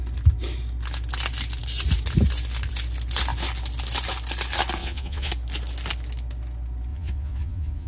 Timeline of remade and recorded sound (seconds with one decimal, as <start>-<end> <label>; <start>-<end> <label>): 0.0-4.8 recorded; 4.8-5.3 remade; 5.3-6.9 recorded; 6.9-7.9 remade